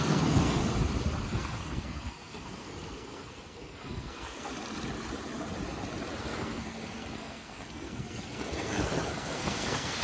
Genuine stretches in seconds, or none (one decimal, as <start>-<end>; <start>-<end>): 0.6-1.2; 4.5-6.2

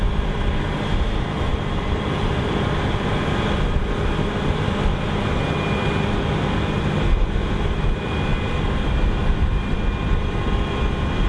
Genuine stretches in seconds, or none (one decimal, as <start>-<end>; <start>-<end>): 0.0-11.3

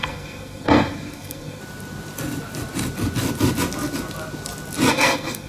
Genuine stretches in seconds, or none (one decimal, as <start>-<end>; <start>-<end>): 1.6-4.9

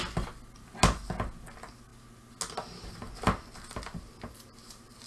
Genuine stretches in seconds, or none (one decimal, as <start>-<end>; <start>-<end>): 0.0-5.1

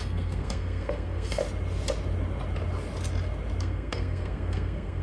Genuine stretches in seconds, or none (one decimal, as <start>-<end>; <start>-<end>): 1.4-3.6